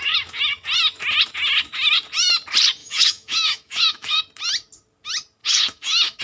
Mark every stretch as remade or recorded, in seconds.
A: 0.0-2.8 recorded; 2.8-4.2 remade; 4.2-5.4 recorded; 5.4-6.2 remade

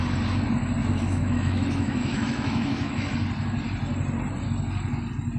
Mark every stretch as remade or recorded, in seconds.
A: 0.0-0.8 recorded; 0.8-3.1 remade; 3.1-5.4 recorded

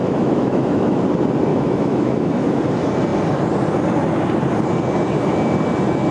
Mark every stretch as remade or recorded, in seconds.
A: 0.0-1.0 remade; 1.0-1.5 recorded; 1.5-2.6 remade; 2.6-6.1 recorded

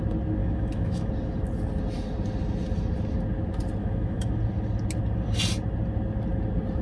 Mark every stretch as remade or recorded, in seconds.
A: 0.0-0.4 recorded; 0.4-1.1 remade; 1.1-3.8 recorded; 3.8-4.4 remade; 4.4-6.8 recorded

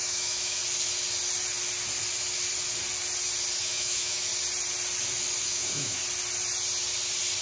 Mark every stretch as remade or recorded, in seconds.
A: 0.0-0.6 remade; 0.6-3.6 recorded; 3.6-4.3 remade; 4.3-5.4 recorded; 5.4-6.0 remade; 6.0-7.4 recorded

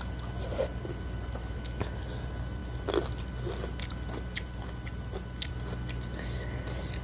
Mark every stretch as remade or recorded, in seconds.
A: 0.0-1.4 recorded; 1.4-1.9 remade; 1.9-7.0 recorded

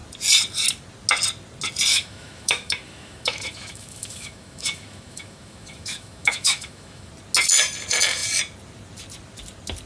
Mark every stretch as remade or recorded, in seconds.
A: 0.0-1.9 recorded; 1.9-7.1 remade; 7.1-9.9 recorded

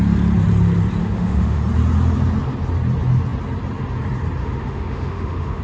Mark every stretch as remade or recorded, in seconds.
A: 0.0-1.0 recorded; 1.0-1.6 remade; 1.6-4.4 recorded; 4.4-5.6 remade